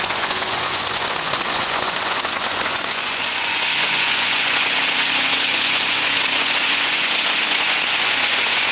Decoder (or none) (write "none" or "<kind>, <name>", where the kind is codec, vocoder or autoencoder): vocoder, Vocos